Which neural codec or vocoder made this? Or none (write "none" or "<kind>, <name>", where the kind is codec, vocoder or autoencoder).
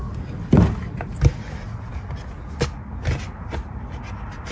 none